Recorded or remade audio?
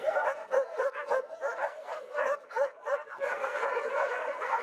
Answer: remade